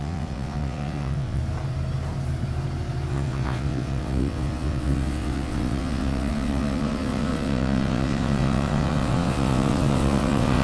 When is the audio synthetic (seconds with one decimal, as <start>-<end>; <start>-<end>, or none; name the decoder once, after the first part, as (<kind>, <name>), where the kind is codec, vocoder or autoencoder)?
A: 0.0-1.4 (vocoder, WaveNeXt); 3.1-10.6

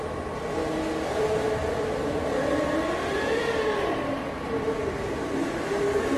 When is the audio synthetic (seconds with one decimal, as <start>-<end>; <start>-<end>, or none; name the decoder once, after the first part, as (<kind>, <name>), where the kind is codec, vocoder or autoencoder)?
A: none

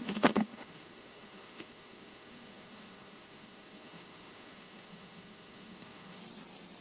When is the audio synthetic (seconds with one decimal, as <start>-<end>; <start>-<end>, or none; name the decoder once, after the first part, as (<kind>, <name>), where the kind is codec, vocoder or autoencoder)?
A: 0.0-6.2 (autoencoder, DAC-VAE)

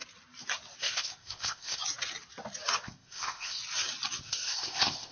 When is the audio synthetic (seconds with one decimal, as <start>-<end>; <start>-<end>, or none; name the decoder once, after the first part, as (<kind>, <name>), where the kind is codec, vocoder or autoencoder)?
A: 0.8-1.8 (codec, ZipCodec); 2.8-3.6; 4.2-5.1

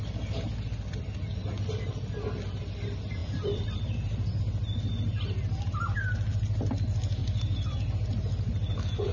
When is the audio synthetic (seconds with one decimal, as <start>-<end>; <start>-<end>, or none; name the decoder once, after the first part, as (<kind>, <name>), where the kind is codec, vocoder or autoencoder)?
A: 3.2-4.4 (vocoder, BigVGAN v2); 7.2-7.9